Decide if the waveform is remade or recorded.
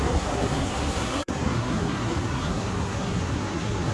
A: remade